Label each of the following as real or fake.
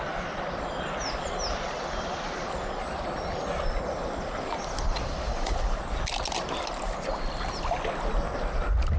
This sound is real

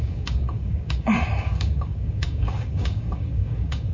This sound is fake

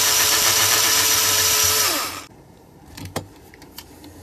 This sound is fake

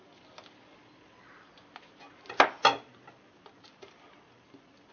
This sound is real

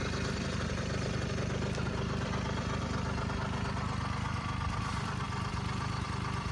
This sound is real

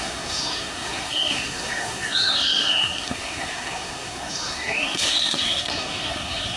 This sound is fake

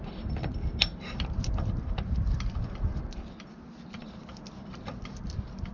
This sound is real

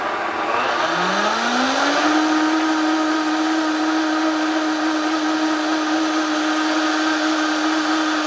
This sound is real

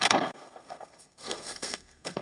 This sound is fake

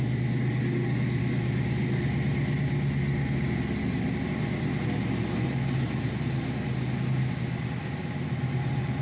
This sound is real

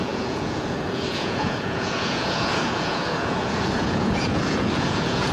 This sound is fake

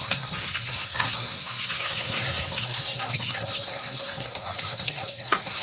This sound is fake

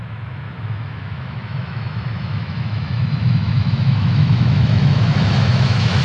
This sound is fake